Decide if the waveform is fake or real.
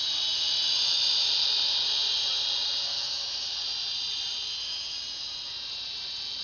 fake